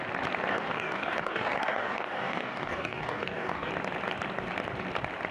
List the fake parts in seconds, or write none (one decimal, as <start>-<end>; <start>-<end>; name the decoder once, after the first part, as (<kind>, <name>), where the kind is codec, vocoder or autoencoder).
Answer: 0.5-3.7 (codec, DAC)